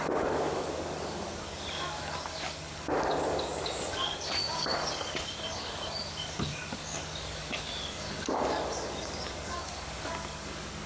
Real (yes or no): no